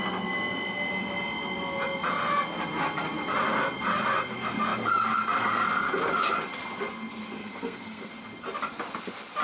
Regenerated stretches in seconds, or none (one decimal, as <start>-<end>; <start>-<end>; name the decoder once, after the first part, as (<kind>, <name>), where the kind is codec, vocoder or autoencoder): 7.4-8.1 (codec, SNAC)